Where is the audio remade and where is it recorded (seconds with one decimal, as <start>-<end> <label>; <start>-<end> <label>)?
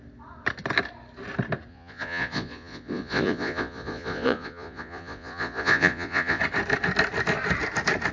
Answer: 0.0-1.7 recorded; 1.7-6.4 remade; 6.4-8.1 recorded